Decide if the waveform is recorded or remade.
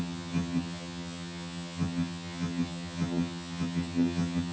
remade